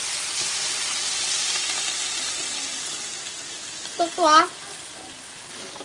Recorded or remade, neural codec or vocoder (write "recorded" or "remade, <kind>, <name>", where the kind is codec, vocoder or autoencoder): recorded